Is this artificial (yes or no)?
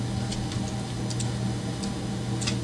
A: no